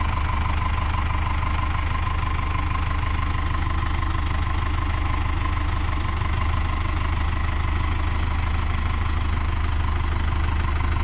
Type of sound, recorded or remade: recorded